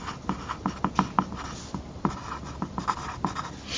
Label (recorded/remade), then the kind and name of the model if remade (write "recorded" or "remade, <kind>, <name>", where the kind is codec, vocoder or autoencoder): recorded